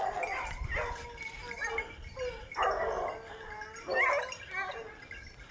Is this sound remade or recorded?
recorded